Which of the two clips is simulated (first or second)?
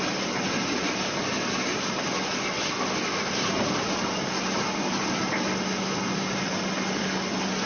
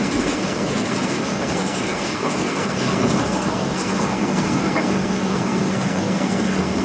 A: second